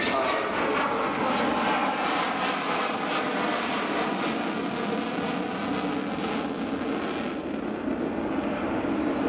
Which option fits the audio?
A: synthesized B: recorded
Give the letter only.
B